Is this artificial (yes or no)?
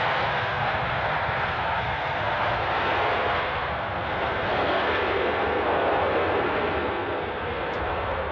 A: yes